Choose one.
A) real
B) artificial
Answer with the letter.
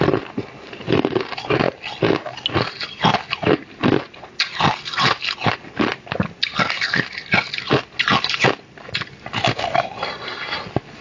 A